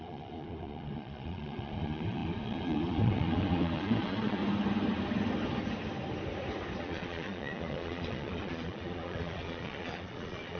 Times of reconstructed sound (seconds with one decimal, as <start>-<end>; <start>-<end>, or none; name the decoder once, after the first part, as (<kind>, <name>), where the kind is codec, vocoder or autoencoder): 0.0-4.4 (vocoder, Vocos); 6.8-10.6